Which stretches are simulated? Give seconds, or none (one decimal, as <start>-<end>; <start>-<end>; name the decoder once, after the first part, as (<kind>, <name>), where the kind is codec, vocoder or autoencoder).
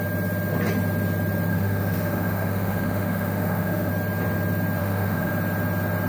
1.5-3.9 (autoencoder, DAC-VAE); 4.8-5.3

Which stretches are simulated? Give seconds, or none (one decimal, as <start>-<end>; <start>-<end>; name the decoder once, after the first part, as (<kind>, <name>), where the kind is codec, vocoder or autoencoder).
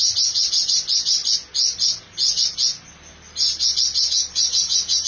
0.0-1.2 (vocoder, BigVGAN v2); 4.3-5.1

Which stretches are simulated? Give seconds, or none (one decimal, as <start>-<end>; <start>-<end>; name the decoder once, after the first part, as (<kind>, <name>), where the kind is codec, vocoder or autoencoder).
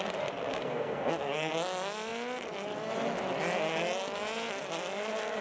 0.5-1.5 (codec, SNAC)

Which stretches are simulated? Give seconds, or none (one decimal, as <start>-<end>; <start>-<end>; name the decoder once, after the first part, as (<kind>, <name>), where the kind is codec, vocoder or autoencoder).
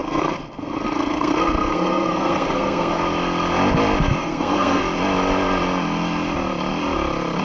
0.0-3.0 (codec, SNAC); 4.2-4.8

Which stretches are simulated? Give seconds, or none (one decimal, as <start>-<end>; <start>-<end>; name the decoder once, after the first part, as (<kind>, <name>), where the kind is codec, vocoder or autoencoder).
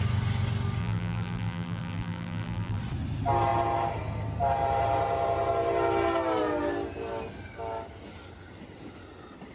0.8-2.8 (vocoder, BigVGAN v2)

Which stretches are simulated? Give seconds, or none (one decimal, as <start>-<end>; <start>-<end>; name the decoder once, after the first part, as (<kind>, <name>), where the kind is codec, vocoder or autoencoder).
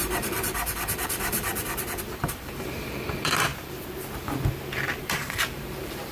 0.0-1.5 (vocoder, BigVGAN v2); 2.2-3.5; 5.0-6.1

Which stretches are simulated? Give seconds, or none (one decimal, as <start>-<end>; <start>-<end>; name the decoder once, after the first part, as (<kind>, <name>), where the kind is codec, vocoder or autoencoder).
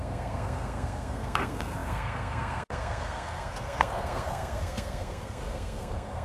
0.0-6.2 (codec, SNAC)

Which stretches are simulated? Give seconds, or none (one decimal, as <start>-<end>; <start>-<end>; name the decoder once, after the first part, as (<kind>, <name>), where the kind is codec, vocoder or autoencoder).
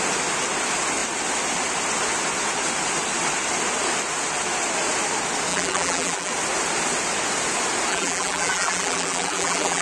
5.5-6.3 (vocoder, BigVGAN v2); 7.9-9.8